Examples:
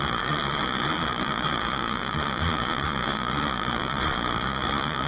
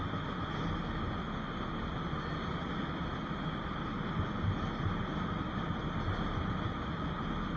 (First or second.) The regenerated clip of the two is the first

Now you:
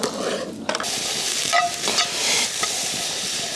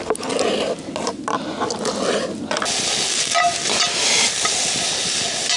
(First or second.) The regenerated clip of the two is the first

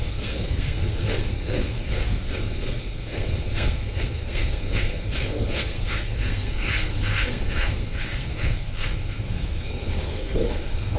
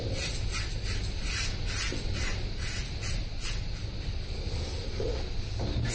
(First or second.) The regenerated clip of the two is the first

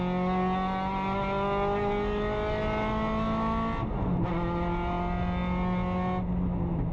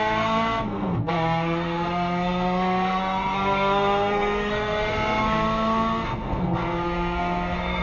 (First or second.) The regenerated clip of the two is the second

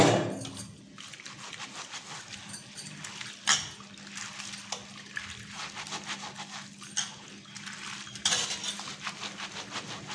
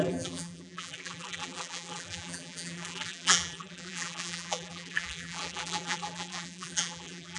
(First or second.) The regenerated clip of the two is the second